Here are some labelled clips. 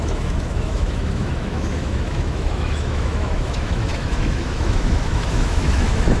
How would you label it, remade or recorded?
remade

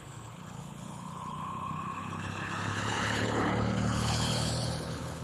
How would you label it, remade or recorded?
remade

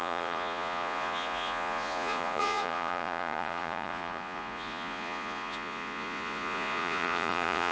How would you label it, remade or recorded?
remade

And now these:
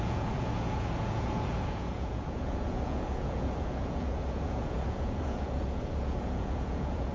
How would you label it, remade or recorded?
remade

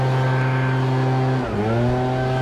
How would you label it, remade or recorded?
recorded